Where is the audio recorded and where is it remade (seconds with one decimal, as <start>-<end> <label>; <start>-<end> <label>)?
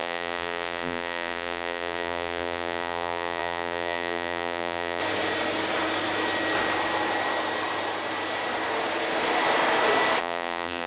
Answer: 0.0-5.0 remade; 5.0-10.2 recorded; 10.2-10.9 remade